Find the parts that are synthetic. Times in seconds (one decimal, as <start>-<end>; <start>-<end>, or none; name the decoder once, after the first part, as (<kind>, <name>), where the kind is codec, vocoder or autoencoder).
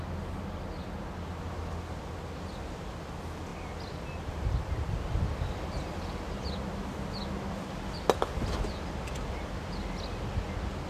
none